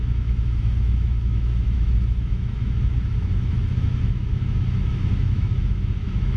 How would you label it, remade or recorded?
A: remade